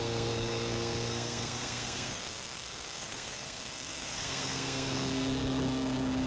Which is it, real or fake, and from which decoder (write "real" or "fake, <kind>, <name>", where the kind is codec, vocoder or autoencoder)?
fake, codec, SNAC